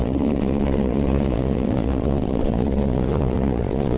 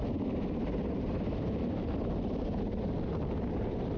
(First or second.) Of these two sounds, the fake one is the first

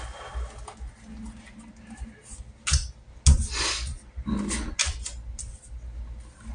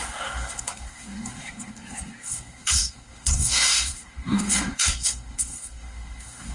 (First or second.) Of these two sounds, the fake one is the second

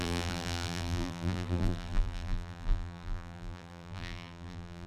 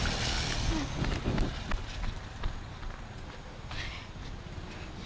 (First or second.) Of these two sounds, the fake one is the first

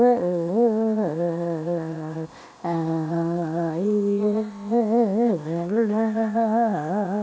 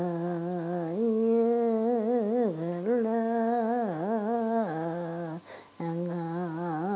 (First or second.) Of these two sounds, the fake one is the first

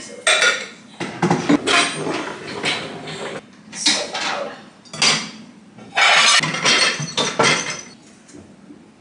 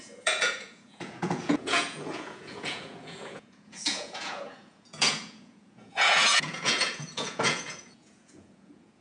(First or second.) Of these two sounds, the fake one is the second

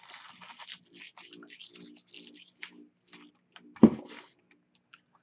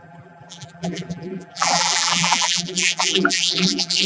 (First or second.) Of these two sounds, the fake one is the second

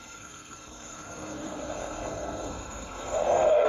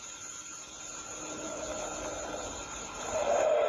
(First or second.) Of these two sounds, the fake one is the first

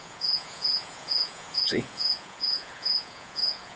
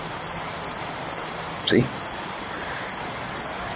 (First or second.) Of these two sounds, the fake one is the first